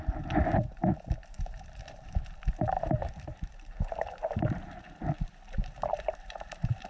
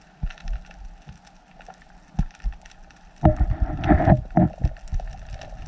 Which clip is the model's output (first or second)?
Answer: first